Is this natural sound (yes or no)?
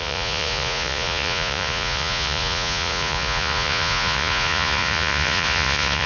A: no